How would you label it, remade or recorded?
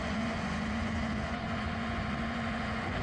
remade